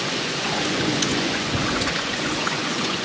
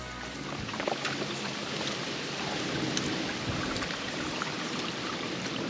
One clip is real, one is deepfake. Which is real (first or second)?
second